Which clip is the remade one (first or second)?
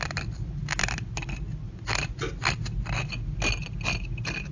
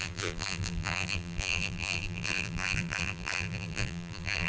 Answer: second